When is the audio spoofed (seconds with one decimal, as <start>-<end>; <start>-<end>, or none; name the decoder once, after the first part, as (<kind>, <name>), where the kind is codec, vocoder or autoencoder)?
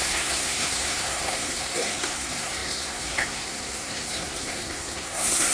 0.0-5.5 (codec, SNAC)